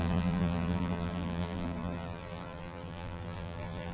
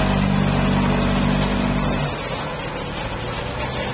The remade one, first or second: first